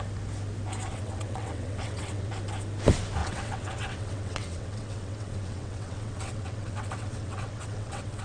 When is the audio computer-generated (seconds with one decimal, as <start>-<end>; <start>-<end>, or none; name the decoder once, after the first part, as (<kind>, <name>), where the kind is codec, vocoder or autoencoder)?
0.9-2.3 (vocoder, WaveNeXt); 3.2-8.2